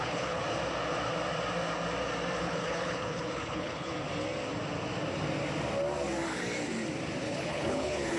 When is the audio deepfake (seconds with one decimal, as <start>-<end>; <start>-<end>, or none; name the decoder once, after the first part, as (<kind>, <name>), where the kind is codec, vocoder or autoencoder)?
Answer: 0.0-0.4 (codec, HILCodec); 2.4-3.9; 7.2-8.2